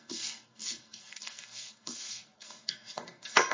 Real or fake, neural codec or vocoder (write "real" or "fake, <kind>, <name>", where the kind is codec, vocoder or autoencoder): fake, codec, SNAC